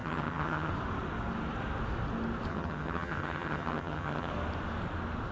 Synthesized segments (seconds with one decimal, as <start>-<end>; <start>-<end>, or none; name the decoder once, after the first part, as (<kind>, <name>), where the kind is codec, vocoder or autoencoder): 0.0-0.7 (vocoder, HiFi-GAN); 2.5-4.3